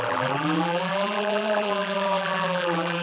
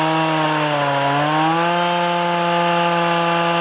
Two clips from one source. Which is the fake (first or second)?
first